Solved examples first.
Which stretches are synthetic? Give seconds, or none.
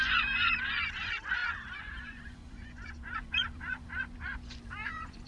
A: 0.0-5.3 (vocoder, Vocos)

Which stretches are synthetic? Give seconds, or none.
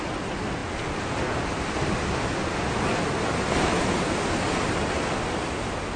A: none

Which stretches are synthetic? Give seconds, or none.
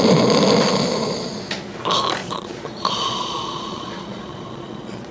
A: 2.2-5.1 (vocoder, Vocos)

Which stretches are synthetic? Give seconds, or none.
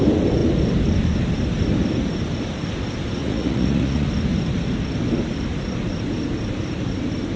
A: 3.2-4.1 (vocoder, Vocos)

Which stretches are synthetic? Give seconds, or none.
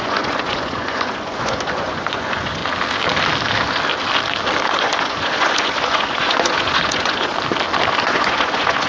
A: 0.0-2.6 (vocoder, Vocos); 4.7-7.3; 8.0-8.9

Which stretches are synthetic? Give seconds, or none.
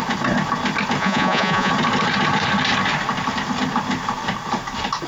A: 1.0-1.7 (vocoder, Vocos)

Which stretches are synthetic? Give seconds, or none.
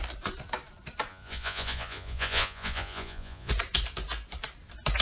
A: 1.1-3.5 (vocoder, Vocos)